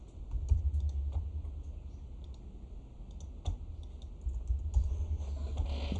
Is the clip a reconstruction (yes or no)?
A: no